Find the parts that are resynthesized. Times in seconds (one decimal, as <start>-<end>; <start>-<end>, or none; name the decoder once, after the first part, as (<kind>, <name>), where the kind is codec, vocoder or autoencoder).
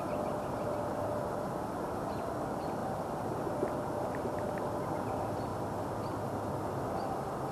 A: none